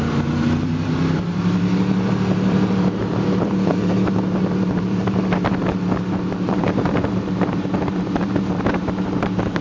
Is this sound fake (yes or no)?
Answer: yes